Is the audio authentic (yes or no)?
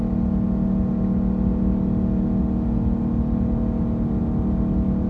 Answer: yes